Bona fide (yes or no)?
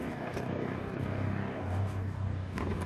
no